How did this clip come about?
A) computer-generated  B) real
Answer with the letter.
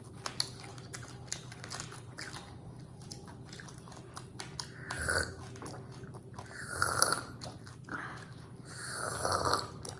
B